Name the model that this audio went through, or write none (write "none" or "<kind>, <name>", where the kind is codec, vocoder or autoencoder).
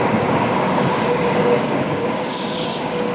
codec, DAC